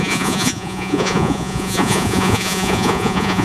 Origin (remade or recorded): remade